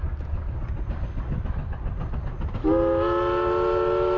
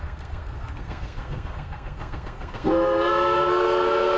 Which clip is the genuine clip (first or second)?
first